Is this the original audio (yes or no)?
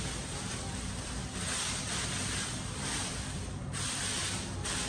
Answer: yes